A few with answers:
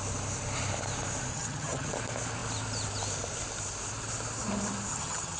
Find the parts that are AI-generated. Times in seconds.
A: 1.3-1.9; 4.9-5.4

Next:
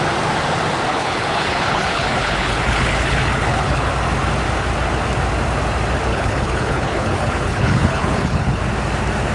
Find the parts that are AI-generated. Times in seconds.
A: 0.9-3.9; 6.1-8.6